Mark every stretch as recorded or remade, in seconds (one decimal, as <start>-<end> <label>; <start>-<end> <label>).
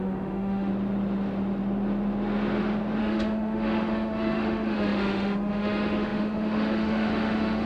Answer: 0.0-0.7 remade; 0.7-3.0 recorded; 3.0-7.7 remade